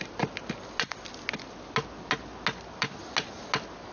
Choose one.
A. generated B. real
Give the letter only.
B